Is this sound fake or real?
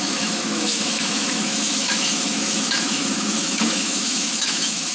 fake